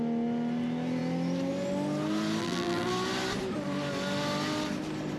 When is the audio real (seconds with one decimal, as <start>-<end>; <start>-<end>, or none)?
0.0-2.4; 2.9-5.2